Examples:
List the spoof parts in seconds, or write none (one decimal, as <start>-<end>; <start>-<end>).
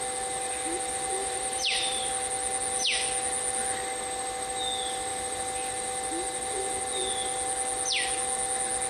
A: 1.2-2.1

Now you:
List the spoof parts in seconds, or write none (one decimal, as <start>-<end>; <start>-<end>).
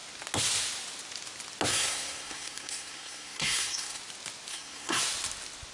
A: 1.7-4.0; 4.5-5.0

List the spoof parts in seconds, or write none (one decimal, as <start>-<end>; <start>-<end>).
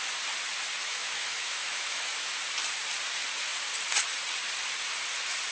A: 0.8-2.3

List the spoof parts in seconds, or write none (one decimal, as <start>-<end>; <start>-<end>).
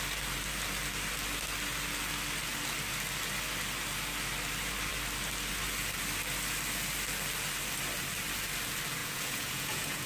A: 9.0-10.1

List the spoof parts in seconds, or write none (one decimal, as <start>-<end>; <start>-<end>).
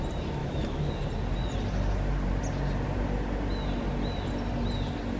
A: 0.4-0.9